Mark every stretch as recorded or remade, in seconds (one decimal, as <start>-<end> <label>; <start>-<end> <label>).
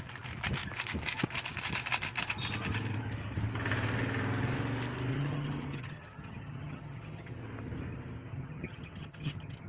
0.0-5.1 recorded; 5.1-7.4 remade; 7.4-8.3 recorded; 8.3-9.7 remade